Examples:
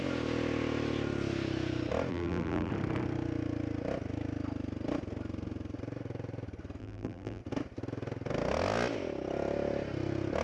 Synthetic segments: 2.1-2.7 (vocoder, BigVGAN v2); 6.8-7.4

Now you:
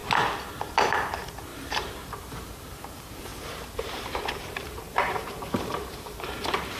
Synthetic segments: 1.5-2.7 (vocoder, BigVGAN v2); 3.3-6.8

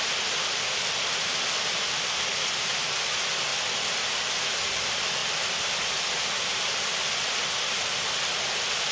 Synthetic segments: 3.5-4.3 (vocoder, BigVGAN v2); 6.5-7.5

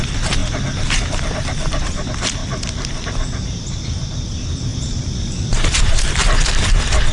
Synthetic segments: 0.0-0.4 (vocoder, BigVGAN v2); 0.9-2.4; 3.1-6.2

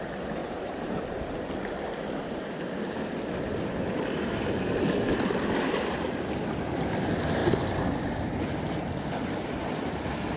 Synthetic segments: 0.4-1.0 (vocoder, BigVGAN v2)

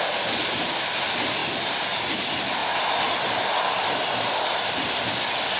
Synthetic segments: 0.0-1.4 (vocoder, BigVGAN v2); 2.0-2.6; 3.9-5.6

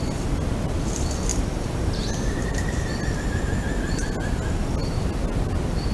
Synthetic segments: 1.3-2.8 (vocoder, BigVGAN v2)

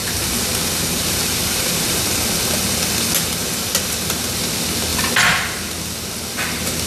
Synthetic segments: 0.0-2.0 (vocoder, BigVGAN v2); 3.4-4.4